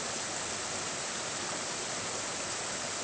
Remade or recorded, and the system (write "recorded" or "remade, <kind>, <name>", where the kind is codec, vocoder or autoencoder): recorded